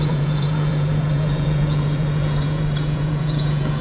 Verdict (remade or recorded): remade